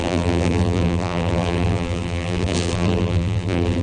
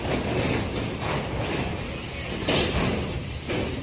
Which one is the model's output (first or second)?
first